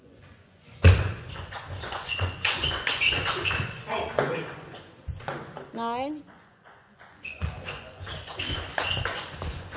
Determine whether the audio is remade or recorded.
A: remade